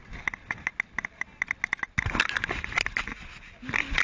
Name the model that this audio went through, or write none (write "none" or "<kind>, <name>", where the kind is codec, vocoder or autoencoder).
none